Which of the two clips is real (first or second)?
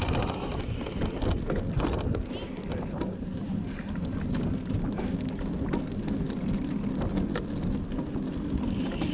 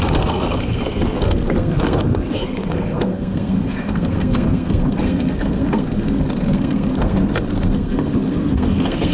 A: first